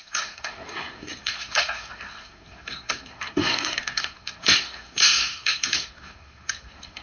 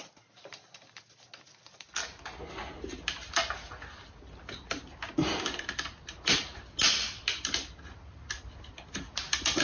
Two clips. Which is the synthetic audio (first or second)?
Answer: first